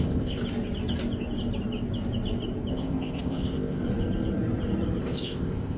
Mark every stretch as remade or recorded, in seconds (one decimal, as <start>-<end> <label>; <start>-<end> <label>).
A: 0.0-0.4 remade; 0.4-2.7 recorded; 2.7-3.8 remade; 3.8-5.0 recorded; 5.0-5.8 remade